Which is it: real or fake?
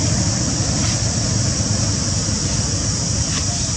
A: fake